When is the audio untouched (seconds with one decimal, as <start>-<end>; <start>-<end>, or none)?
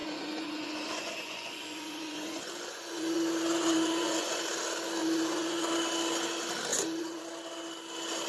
4.4-5.0; 5.7-6.7; 7.2-8.3